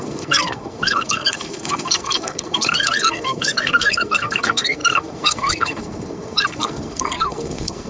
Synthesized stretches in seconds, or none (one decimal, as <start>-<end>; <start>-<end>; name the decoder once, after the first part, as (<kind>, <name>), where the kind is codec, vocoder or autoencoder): 0.0-7.9 (codec, SNAC)